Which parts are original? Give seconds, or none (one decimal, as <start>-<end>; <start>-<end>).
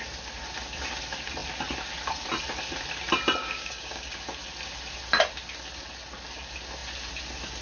0.0-3.4; 4.0-7.6